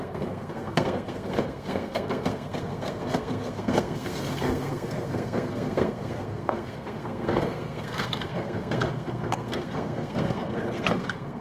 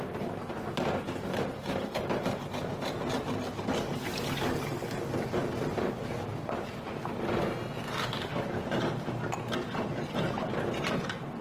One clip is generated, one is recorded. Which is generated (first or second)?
first